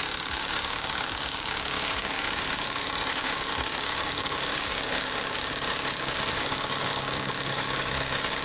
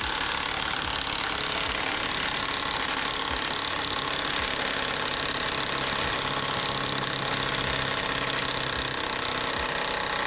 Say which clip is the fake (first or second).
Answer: first